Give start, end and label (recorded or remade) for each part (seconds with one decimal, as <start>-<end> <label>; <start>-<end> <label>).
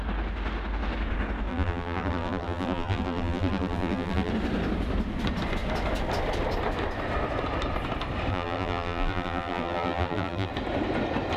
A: 0.0-1.5 recorded; 1.5-4.3 remade; 4.3-8.3 recorded; 8.3-10.5 remade; 10.5-11.4 recorded